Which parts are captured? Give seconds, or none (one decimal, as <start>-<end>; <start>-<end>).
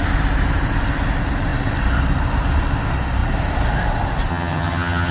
0.0-4.3